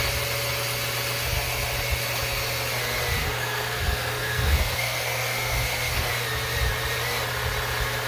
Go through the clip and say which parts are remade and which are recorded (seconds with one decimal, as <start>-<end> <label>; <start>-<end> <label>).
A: 0.0-3.2 recorded; 3.2-6.1 remade; 6.1-8.1 recorded